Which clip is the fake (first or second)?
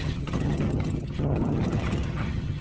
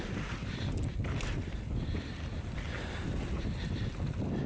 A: first